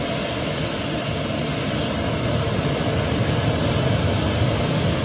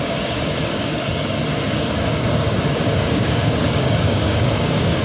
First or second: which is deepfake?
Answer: second